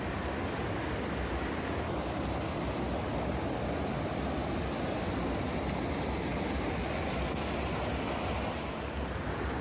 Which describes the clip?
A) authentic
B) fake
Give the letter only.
A